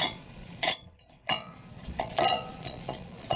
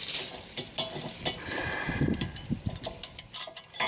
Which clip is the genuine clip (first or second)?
second